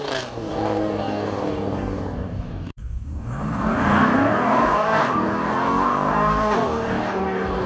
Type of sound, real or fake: fake